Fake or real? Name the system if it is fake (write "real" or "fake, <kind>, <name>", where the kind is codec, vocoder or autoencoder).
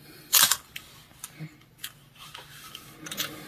real